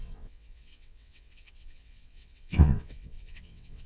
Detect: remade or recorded remade